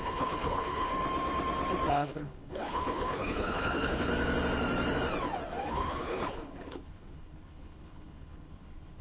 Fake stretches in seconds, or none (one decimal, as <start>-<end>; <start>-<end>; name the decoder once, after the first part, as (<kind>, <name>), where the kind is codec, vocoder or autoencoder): 0.0-0.9 (codec, HILCodec); 1.9-4.1; 5.7-9.0